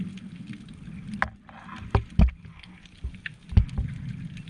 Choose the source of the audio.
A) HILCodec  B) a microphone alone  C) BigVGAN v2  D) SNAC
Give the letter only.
B